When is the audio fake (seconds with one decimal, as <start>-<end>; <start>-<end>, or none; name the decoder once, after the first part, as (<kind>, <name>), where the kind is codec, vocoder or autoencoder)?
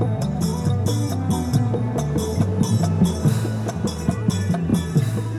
0.0-0.5 (vocoder, BigVGAN v2); 3.7-4.7